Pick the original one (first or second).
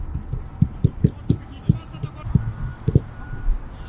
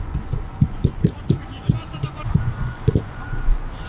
first